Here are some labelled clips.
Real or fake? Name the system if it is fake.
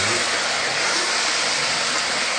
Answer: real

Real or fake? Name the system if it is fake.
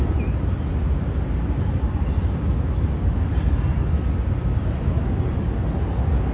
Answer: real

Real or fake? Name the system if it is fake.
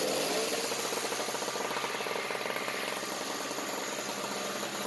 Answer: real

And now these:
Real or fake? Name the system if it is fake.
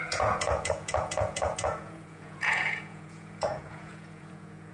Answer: fake, vocoder, Vocos